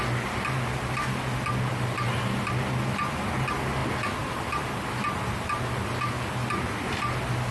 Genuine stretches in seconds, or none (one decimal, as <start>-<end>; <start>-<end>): 0.0-7.5